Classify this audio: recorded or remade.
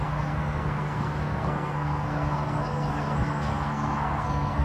remade